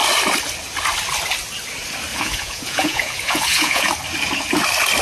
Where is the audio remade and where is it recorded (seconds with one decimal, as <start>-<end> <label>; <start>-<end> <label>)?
0.0-2.1 recorded; 2.1-3.9 remade; 3.9-5.0 recorded